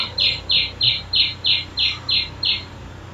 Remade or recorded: recorded